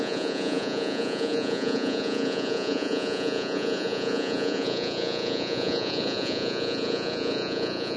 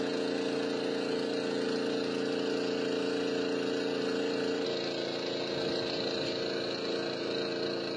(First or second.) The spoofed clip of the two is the first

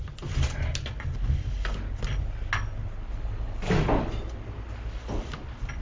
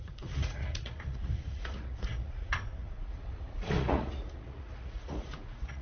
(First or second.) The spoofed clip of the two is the second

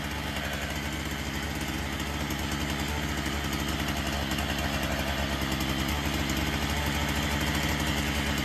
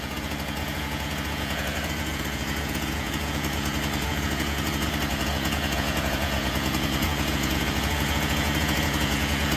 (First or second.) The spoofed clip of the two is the second